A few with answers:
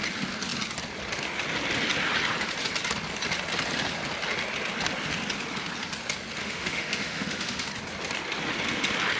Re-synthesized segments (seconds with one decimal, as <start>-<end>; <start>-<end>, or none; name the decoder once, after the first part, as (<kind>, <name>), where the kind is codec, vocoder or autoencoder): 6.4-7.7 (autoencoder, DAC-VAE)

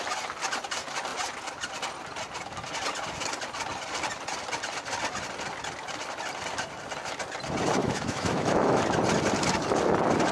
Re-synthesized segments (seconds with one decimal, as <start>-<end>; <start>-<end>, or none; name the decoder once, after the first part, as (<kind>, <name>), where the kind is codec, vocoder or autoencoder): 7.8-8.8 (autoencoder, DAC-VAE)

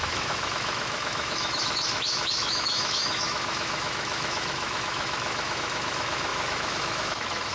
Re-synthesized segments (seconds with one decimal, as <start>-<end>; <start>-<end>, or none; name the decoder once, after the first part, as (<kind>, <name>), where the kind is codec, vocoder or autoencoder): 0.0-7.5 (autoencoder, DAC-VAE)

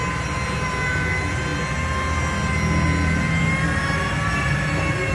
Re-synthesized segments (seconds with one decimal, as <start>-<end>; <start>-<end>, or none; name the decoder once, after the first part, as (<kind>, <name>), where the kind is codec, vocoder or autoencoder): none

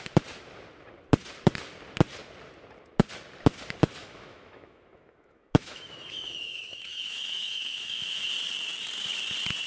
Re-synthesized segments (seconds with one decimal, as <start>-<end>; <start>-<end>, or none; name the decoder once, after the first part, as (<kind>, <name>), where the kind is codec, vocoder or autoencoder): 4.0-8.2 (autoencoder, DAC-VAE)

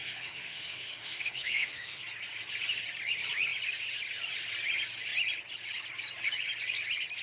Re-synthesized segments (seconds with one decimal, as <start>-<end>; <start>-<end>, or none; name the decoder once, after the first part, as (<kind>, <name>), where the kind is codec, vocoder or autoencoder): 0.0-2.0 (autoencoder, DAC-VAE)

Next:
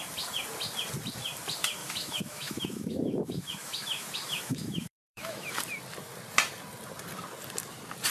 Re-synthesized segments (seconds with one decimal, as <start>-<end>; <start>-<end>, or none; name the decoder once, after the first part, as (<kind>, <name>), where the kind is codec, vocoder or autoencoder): 1.8-5.5 (autoencoder, DAC-VAE)